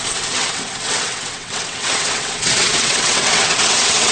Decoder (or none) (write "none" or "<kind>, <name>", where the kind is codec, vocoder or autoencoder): vocoder, WaveNeXt